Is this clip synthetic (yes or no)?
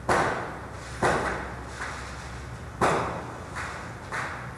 no